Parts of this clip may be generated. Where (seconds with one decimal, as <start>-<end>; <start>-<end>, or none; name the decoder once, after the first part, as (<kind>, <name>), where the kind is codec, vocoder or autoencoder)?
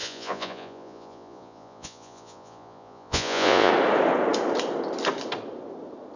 0.0-3.7 (vocoder, Vocos)